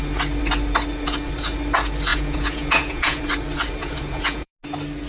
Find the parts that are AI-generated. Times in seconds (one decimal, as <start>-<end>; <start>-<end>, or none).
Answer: 2.1-3.2; 3.8-4.5